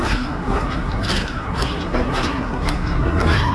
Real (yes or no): no